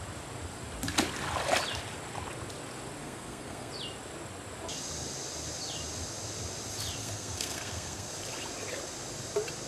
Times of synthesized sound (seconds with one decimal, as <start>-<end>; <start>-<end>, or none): 3.0-3.7; 7.0-8.1